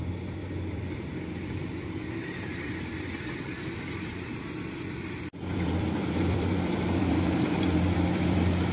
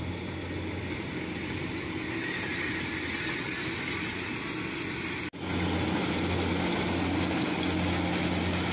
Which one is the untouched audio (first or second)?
second